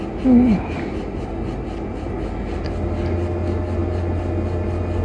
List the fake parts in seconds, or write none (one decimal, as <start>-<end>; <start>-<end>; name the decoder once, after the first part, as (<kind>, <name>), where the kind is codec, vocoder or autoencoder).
none